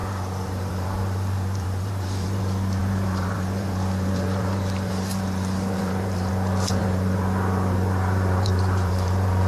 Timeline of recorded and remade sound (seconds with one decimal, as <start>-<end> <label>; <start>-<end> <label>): 0.0-2.4 remade; 2.4-2.8 recorded; 2.8-6.3 remade; 6.3-6.8 recorded; 6.8-9.5 remade